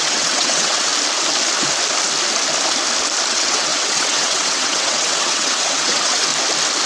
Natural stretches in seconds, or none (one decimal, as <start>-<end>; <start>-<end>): 0.9-3.3; 6.3-6.9